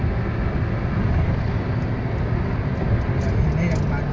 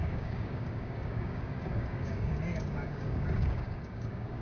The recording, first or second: first